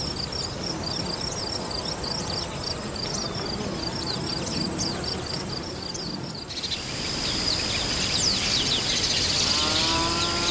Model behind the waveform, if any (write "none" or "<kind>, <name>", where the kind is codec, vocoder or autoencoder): none